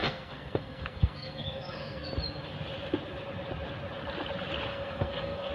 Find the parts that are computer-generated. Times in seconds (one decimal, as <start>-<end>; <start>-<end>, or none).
0.0-2.1; 4.7-5.5